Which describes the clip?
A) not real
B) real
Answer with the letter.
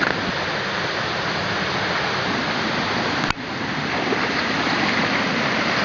B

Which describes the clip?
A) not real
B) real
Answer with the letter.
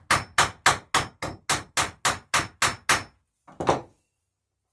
B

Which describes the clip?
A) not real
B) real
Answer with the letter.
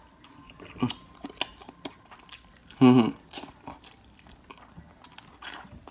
B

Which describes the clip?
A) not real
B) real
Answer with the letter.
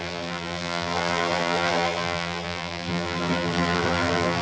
A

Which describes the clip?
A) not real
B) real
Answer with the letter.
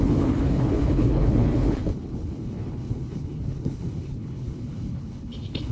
A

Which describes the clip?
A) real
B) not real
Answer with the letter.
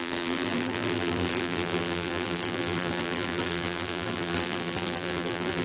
B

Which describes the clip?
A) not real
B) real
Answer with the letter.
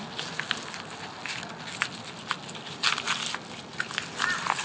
B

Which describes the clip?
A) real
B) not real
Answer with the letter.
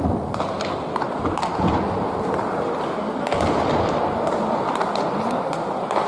A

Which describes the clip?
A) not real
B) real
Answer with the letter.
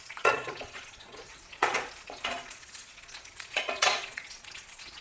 A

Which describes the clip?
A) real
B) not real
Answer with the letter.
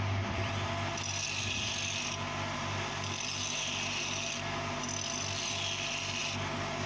A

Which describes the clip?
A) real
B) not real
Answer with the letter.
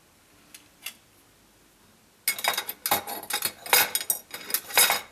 A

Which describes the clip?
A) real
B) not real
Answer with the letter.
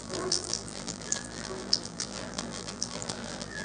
B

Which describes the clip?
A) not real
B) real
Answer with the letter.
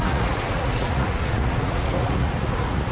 A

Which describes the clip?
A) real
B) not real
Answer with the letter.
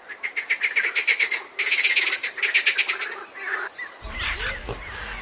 A